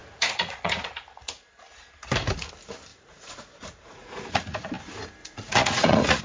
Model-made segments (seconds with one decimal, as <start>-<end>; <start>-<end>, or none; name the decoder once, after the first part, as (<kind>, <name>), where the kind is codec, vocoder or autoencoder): 0.0-1.4 (vocoder, Vocos); 2.9-4.7; 5.2-6.2